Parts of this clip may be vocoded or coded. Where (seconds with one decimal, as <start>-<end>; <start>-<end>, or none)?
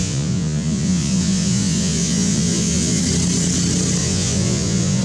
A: 0.0-3.0; 4.0-5.0